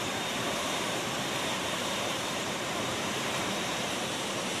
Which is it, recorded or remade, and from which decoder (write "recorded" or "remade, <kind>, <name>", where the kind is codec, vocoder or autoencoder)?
remade, vocoder, BigVGAN v2